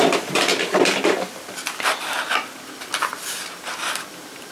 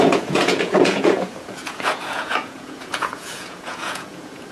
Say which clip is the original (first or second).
first